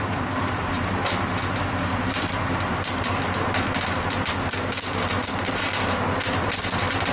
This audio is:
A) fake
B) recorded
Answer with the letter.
A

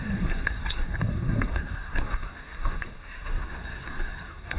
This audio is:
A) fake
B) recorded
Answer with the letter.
A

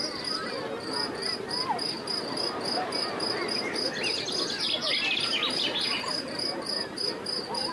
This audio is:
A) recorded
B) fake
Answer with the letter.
A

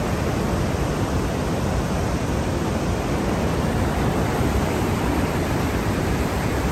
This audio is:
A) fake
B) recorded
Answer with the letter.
A